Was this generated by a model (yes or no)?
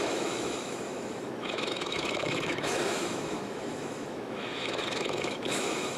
yes